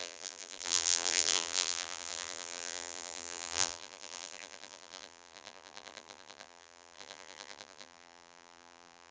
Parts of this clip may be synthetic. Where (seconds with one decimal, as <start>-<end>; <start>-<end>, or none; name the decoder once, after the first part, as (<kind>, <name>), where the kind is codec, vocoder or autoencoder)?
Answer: 0.0-9.1 (vocoder, BigVGAN v2)